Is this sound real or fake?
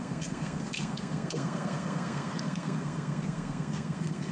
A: fake